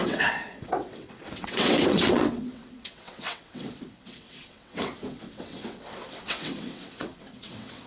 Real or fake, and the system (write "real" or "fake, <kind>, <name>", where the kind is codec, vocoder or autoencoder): fake, vocoder, WaveNeXt